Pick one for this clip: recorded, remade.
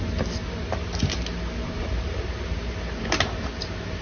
recorded